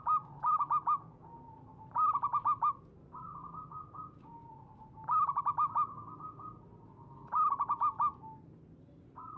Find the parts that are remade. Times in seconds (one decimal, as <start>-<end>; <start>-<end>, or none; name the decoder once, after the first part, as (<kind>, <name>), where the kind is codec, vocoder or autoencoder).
none